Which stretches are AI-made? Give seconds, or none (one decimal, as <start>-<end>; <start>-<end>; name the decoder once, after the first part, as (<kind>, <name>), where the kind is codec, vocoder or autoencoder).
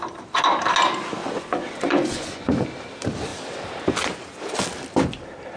1.2-2.5 (vocoder, Vocos)